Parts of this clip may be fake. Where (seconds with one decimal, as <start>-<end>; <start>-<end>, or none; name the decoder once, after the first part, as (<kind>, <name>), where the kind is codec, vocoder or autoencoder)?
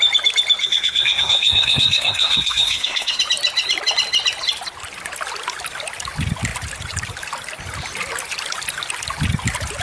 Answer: 0.6-3.2 (codec, SNAC)